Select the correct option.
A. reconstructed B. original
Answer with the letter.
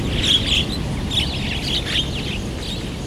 B